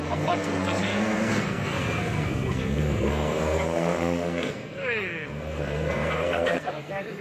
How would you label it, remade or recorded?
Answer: remade